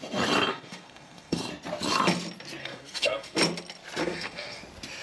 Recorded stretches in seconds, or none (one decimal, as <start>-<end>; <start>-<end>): 0.0-0.5; 1.4-2.6; 3.4-4.0; 4.6-5.0